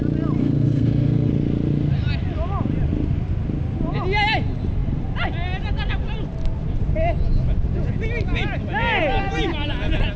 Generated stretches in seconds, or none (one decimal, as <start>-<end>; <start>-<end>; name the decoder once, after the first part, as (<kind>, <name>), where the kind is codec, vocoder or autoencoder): 0.4-1.3 (codec, SNAC)

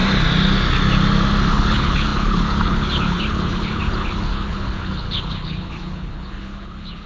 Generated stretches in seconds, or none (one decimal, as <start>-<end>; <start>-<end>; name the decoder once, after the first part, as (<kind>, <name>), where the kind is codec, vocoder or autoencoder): 1.5-7.1 (codec, HILCodec)